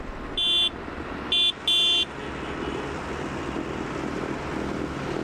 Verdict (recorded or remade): recorded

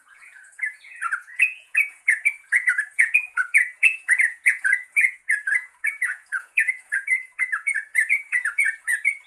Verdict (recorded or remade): remade